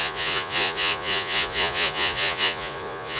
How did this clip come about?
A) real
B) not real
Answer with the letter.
B